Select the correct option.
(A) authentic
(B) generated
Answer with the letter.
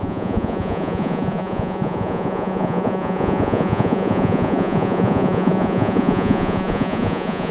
B